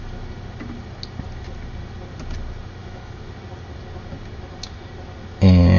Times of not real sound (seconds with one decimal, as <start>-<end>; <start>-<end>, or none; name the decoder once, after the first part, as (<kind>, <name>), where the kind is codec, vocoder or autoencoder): 2.8-3.3 (autoencoder, DAC-VAE)